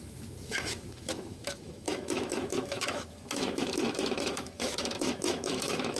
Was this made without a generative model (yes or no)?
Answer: no